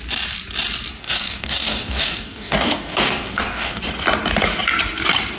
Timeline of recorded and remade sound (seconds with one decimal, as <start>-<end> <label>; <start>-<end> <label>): 0.0-1.0 recorded; 1.0-3.8 remade; 3.8-5.4 recorded